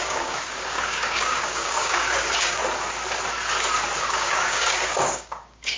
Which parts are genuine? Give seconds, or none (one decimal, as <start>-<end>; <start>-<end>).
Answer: 2.6-4.0